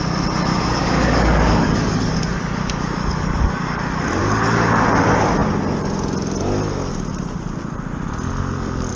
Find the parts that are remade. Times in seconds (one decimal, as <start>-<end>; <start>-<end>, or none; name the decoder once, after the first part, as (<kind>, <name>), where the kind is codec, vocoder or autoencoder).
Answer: 0.5-3.8 (codec, DAC); 4.2-4.9